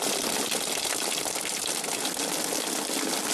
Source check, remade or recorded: recorded